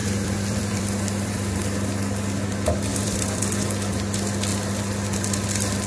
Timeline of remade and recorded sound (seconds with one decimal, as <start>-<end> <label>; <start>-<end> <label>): 0.0-1.6 remade; 1.6-2.9 recorded; 2.9-3.4 remade; 3.4-5.9 recorded

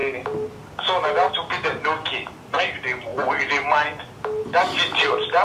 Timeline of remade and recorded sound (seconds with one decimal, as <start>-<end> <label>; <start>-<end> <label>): 0.0-5.4 recorded

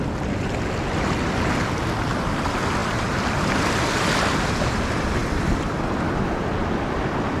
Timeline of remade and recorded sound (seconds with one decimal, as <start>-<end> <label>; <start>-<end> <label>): 0.0-7.4 recorded